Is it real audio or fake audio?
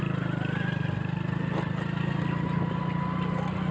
real